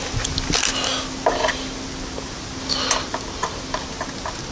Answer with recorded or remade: recorded